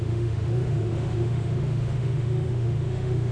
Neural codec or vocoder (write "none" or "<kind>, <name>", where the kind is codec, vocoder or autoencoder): autoencoder, DAC-VAE